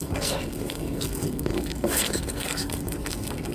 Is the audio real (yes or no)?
no